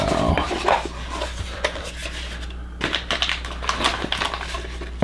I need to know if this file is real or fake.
real